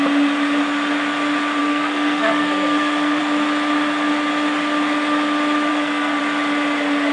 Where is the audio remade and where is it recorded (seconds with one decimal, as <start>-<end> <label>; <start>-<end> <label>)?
0.0-1.6 recorded; 1.6-3.2 remade; 3.2-5.7 recorded; 5.7-6.2 remade; 6.2-7.1 recorded